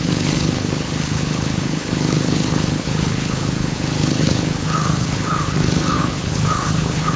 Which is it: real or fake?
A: fake